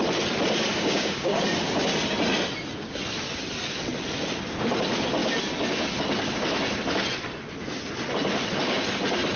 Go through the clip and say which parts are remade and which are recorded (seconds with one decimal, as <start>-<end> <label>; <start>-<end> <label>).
0.0-0.7 recorded; 0.7-1.4 remade; 1.4-9.4 recorded